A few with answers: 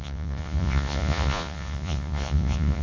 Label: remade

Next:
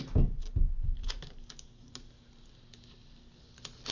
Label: recorded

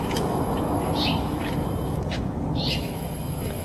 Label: remade